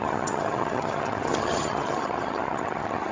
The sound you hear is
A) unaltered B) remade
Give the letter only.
B